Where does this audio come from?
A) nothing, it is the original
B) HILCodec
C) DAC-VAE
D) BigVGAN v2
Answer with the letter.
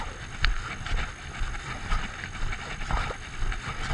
A